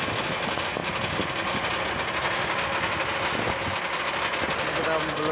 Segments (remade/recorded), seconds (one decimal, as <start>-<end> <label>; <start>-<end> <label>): 0.0-5.3 recorded